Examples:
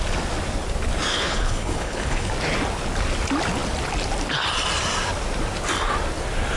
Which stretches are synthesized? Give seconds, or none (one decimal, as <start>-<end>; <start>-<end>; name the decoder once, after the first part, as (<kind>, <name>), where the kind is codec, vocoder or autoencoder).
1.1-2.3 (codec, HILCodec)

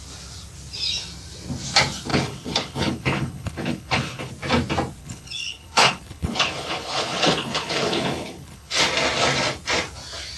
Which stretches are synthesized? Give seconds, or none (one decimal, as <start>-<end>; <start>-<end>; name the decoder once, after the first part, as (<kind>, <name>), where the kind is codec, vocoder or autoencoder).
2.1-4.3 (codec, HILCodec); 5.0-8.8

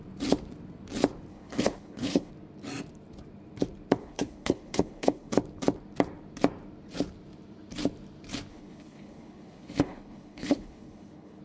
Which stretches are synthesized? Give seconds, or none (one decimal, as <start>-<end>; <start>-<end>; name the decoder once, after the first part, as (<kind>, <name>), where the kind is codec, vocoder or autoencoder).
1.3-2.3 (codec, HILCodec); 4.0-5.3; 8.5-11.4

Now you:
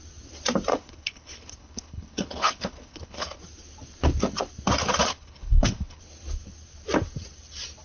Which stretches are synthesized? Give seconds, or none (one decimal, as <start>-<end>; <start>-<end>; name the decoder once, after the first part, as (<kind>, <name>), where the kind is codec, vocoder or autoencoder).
0.7-3.4 (codec, HILCodec); 5.1-6.0